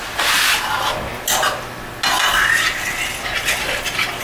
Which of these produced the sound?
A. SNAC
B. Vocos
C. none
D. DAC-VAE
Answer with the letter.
C